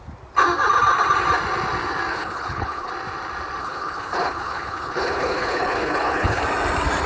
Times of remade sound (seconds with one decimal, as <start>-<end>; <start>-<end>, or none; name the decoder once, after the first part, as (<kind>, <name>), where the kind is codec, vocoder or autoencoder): 2.1-2.9 (codec, HILCodec); 3.6-6.4